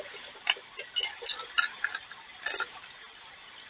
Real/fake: real